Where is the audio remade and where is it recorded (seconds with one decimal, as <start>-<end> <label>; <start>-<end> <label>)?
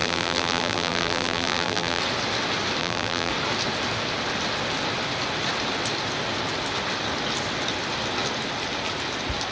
0.0-2.0 remade; 2.0-2.8 recorded; 2.8-3.3 remade; 3.3-9.5 recorded